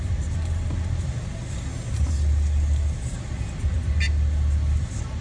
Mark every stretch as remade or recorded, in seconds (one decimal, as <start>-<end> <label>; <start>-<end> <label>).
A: 0.0-5.2 recorded